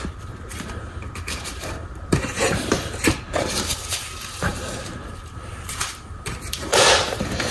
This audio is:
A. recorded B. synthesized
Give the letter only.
B